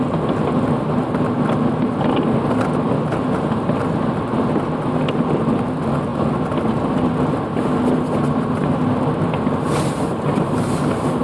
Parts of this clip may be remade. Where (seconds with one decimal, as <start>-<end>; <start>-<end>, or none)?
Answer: none